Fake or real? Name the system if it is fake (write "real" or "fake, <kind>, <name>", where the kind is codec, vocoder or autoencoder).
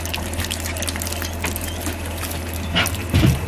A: real